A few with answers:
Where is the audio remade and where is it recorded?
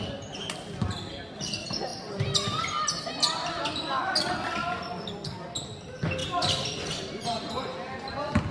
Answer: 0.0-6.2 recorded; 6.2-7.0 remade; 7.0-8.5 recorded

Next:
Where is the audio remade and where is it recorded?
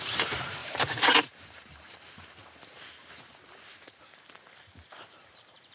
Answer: 0.0-5.7 remade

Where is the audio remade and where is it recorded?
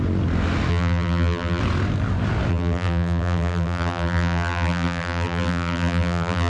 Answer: 0.0-0.7 recorded; 0.7-1.6 remade; 1.6-2.5 recorded; 2.5-6.5 remade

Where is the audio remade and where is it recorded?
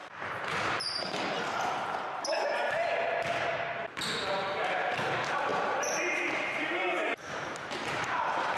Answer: 0.0-1.2 remade; 1.2-5.5 recorded; 5.5-8.6 remade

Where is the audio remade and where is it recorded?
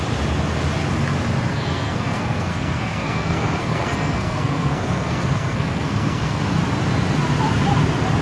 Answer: 0.0-1.5 recorded; 1.5-6.4 remade; 6.4-8.2 recorded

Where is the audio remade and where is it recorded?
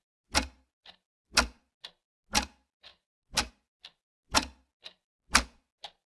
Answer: 0.0-6.1 recorded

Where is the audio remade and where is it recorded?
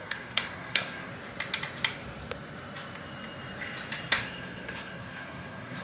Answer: 0.0-1.1 remade; 1.1-4.1 recorded; 4.1-5.8 remade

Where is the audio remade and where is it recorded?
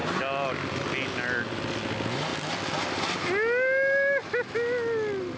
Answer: 0.0-5.4 recorded